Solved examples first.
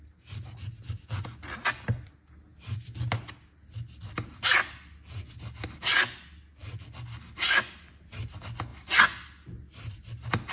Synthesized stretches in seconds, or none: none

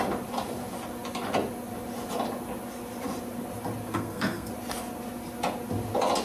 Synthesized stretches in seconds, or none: 3.9-4.5 (codec, SNAC)

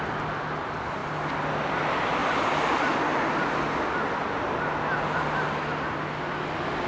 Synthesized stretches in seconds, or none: none

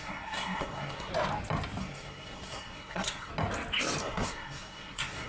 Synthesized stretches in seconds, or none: 0.0-1.1 (codec, SNAC); 1.8-3.3; 4.0-5.3